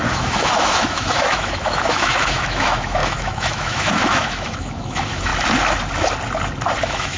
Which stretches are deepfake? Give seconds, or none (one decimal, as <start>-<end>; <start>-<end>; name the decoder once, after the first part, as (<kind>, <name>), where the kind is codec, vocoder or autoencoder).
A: 0.0-5.3 (autoencoder, DAC-VAE); 6.8-7.2